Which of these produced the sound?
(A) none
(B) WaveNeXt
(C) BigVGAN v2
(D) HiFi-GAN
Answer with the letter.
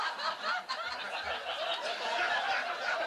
A